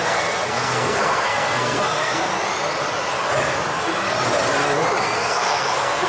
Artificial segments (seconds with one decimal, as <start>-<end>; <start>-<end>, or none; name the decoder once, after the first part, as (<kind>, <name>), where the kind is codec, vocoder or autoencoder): 0.0-2.3 (codec, SNAC); 5.0-6.1